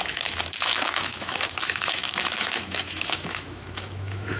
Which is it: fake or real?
fake